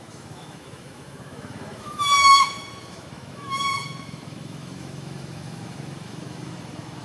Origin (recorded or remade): remade